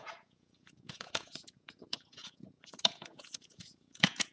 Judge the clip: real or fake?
fake